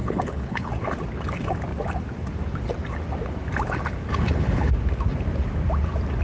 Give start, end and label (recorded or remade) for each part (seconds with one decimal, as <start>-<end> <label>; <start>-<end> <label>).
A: 0.0-0.7 remade; 0.7-4.1 recorded; 4.1-4.7 remade; 4.7-6.2 recorded